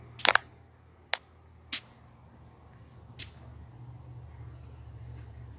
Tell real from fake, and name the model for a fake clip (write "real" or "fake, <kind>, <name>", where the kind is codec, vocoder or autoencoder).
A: real